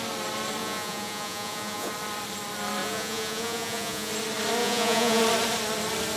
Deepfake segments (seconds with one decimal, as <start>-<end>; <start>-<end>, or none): 0.6-1.9; 2.8-4.1; 4.6-5.2